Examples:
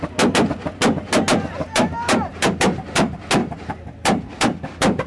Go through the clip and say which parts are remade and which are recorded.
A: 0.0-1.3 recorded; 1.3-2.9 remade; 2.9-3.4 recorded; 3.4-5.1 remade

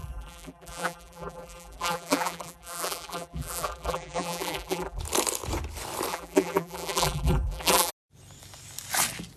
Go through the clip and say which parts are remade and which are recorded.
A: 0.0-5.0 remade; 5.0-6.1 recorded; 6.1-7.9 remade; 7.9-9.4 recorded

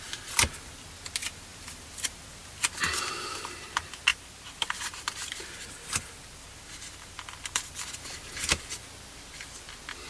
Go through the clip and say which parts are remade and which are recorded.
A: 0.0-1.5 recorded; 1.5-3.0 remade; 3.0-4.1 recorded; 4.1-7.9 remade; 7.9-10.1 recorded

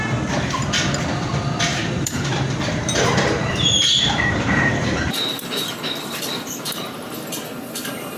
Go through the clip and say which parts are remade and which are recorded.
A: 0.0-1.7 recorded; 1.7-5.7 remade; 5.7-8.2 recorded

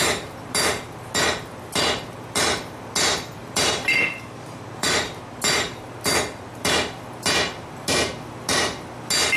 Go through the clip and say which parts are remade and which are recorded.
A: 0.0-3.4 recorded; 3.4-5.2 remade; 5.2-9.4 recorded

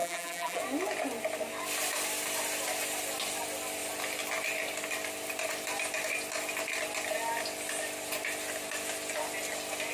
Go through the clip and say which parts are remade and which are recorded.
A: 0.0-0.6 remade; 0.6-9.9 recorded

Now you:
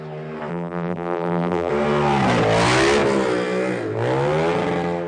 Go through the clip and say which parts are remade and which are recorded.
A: 0.0-0.5 recorded; 0.5-1.7 remade; 1.7-5.1 recorded

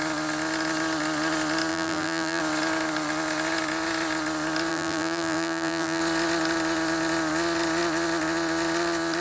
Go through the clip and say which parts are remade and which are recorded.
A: 0.0-1.7 recorded; 1.7-2.4 remade; 2.4-4.7 recorded; 4.7-6.0 remade; 6.0-9.2 recorded